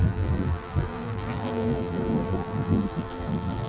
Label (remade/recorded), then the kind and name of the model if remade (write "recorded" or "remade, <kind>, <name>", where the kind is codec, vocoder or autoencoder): remade, vocoder, BigVGAN v2